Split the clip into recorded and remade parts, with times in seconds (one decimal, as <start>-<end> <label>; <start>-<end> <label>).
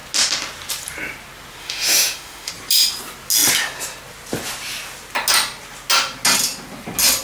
0.0-1.6 recorded; 1.6-2.5 remade; 2.5-7.2 recorded